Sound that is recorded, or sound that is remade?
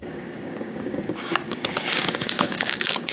remade